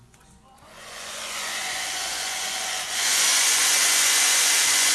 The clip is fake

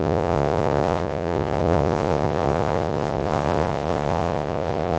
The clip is fake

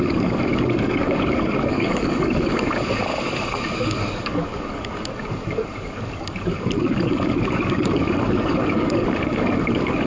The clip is fake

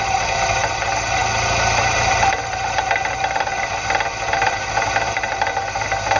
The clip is real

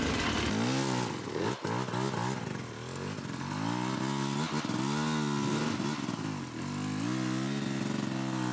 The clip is real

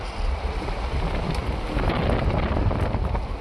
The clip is real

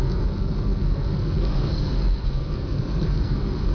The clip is fake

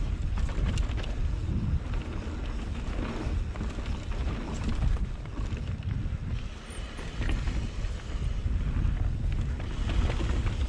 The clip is real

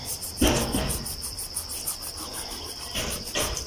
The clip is real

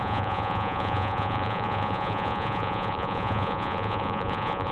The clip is fake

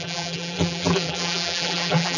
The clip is fake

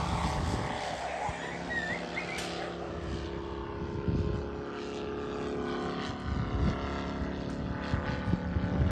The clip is real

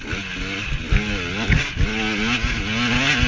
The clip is real